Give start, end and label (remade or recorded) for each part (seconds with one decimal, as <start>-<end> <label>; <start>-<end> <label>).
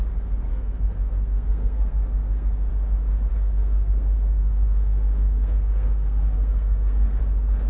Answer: 0.0-0.5 recorded; 0.5-2.7 remade; 2.7-3.3 recorded; 3.3-7.2 remade; 7.2-7.7 recorded